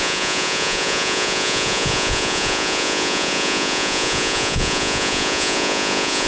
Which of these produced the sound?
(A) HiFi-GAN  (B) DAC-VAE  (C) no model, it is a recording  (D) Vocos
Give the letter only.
D